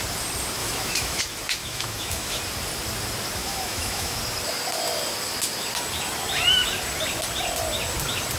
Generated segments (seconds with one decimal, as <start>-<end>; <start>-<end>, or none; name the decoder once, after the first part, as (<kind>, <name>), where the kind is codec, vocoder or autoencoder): 0.6-1.2 (autoencoder, DAC-VAE); 1.6-2.4; 3.4-4.2